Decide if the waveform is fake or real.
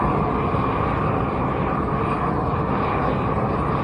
real